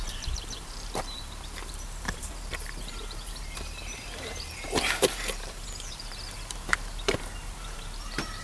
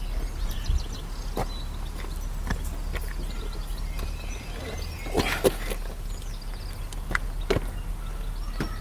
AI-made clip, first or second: first